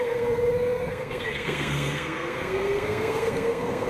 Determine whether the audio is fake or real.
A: fake